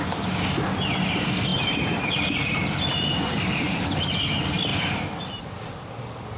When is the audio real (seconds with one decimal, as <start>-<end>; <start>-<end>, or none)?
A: 0.0-6.4